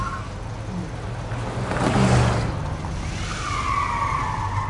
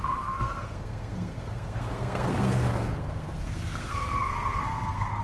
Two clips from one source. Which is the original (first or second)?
first